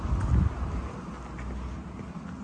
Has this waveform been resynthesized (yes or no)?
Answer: no